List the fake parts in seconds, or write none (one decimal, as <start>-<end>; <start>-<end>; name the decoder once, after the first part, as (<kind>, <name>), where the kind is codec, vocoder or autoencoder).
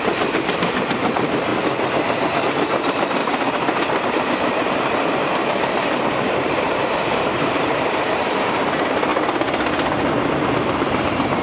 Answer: 0.0-1.5 (vocoder, BigVGAN v2); 2.4-3.2; 4.1-9.1; 10.3-11.4